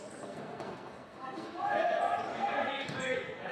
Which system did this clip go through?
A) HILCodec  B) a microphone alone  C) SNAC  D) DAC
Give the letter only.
C